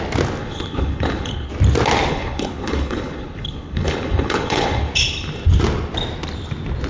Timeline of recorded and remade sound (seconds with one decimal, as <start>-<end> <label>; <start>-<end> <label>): 0.0-0.4 recorded; 0.4-1.5 remade; 1.5-2.1 recorded; 2.1-4.9 remade; 4.9-6.9 recorded